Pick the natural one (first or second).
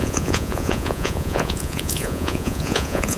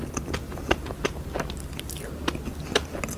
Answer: second